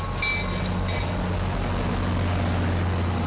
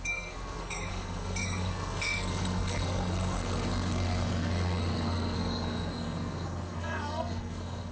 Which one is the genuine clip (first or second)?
first